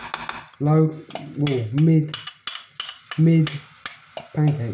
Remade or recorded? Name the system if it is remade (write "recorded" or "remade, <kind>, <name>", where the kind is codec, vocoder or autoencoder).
recorded